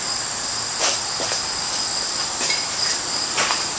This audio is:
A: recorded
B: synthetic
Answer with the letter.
A